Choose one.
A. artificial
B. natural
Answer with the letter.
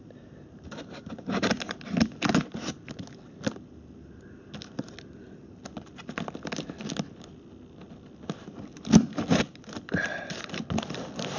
B